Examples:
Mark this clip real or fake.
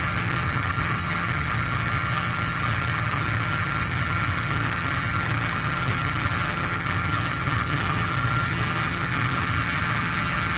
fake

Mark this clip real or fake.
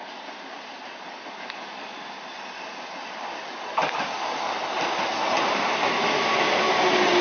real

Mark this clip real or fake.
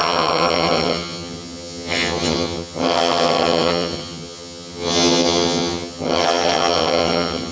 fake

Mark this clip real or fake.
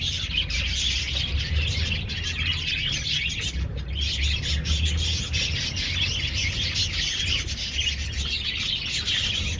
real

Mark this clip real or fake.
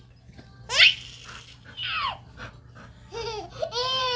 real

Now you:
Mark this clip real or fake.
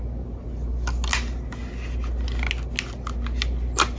real